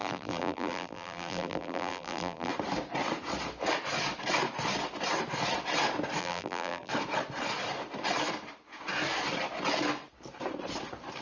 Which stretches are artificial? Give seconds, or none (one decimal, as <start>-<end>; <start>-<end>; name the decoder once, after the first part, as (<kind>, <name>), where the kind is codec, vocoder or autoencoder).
0.0-2.5 (vocoder, BigVGAN v2); 6.2-6.9